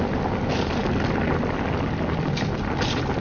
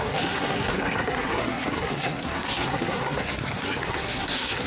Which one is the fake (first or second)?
second